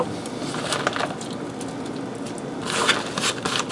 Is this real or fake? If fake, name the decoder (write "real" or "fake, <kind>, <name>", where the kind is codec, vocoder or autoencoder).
real